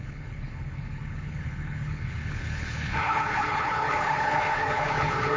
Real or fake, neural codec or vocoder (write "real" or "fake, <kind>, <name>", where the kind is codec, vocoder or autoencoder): fake, codec, HILCodec